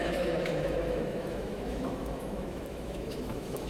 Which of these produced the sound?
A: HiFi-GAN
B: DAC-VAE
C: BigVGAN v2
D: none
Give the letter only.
B